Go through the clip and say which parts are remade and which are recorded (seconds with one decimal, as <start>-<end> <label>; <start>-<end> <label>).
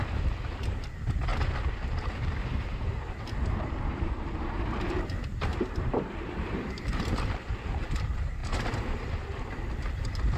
0.0-1.3 remade; 1.3-2.0 recorded; 2.0-10.4 remade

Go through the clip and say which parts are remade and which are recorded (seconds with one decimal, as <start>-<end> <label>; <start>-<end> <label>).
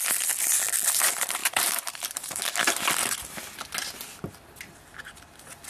0.0-1.4 recorded; 1.4-2.4 remade; 2.4-5.7 recorded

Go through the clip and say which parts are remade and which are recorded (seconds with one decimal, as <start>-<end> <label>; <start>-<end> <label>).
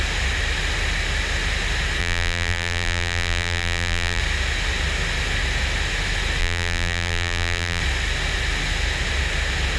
0.0-2.0 recorded; 2.0-4.2 remade; 4.2-6.4 recorded; 6.4-7.8 remade; 7.8-9.8 recorded